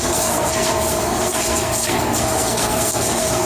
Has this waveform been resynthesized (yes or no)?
yes